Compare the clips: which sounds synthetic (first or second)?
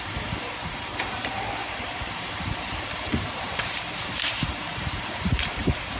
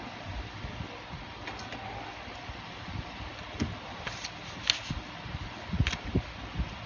first